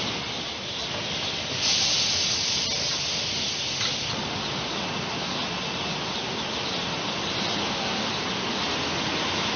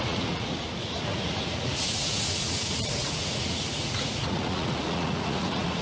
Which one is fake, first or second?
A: second